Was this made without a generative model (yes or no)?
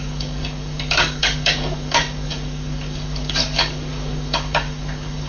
no